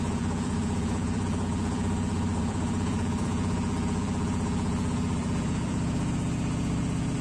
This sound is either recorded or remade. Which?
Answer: remade